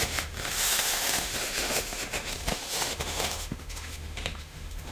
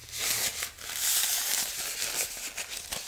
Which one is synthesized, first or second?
first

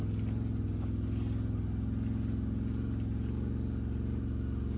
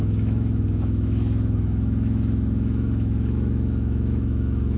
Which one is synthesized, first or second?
second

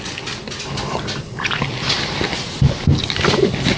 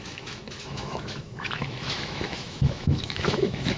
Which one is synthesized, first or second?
second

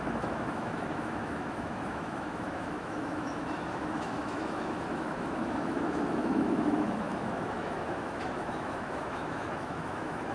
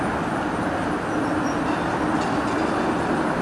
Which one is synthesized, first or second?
first